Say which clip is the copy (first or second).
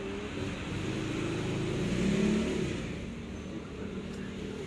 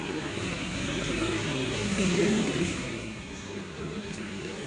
second